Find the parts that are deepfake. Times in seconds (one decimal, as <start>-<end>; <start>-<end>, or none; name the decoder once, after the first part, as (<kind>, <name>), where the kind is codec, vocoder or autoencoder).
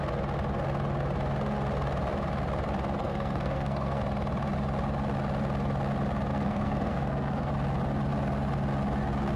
3.0-4.0 (codec, SNAC); 6.3-7.5